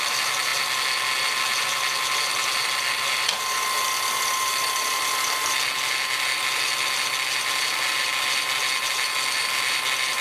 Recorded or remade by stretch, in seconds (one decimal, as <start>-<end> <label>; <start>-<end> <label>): 0.0-10.2 recorded